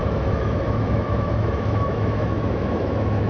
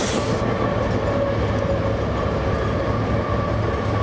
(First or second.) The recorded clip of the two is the second